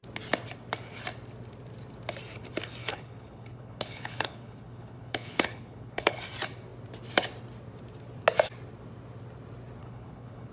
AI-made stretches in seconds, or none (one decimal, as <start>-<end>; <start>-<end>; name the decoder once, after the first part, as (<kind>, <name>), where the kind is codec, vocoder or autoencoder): 2.8-6.2 (codec, HILCodec); 9.8-10.5